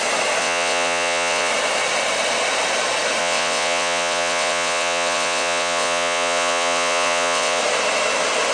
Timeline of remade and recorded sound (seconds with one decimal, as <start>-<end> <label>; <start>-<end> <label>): 0.0-0.4 recorded; 0.4-1.5 remade; 1.5-3.2 recorded; 3.2-7.6 remade; 7.6-8.5 recorded